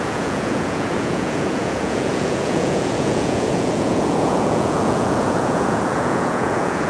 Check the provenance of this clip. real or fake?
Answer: fake